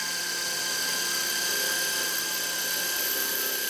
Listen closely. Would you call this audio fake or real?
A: real